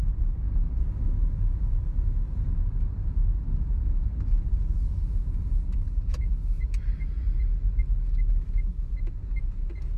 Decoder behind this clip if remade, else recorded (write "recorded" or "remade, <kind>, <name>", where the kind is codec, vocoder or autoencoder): recorded